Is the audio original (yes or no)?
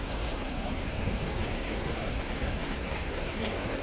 no